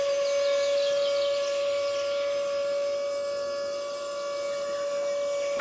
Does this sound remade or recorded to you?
recorded